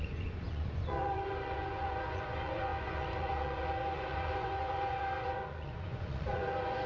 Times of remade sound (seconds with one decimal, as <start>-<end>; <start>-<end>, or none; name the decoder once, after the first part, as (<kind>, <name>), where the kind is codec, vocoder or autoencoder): 0.0-6.9 (vocoder, Vocos)